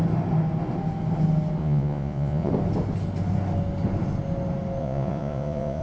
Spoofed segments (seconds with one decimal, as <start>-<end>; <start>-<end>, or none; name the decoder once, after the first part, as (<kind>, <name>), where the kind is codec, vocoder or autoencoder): 1.6-2.5 (vocoder, Vocos); 4.8-5.8